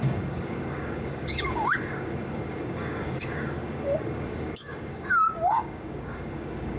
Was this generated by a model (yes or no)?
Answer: yes